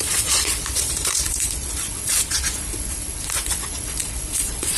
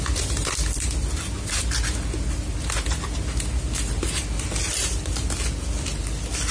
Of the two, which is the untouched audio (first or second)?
second